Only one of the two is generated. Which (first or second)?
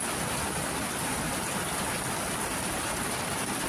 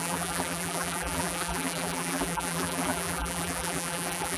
second